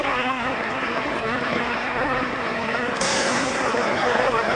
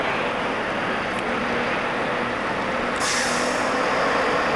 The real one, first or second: second